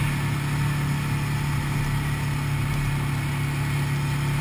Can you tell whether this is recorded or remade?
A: recorded